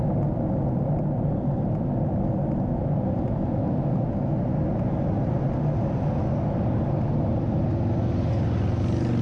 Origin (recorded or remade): recorded